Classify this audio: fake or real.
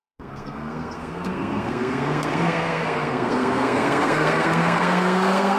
fake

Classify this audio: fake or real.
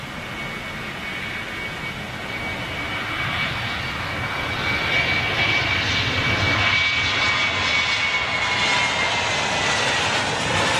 real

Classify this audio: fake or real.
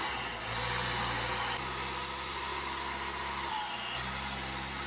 real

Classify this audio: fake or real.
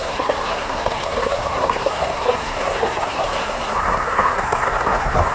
fake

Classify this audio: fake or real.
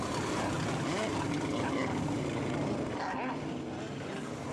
real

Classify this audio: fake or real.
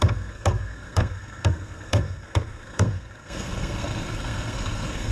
fake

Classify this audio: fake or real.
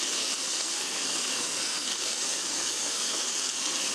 fake